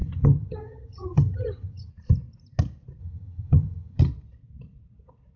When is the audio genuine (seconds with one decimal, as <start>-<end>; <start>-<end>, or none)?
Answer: 1.9-3.0; 4.0-5.4